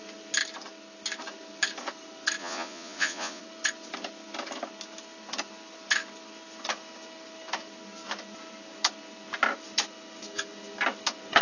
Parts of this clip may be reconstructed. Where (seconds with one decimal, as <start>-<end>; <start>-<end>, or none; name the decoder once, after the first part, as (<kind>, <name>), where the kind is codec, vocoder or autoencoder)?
2.4-3.4 (vocoder, Vocos)